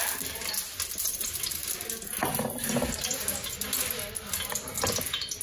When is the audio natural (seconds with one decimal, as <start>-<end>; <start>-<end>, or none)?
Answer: 0.0-5.4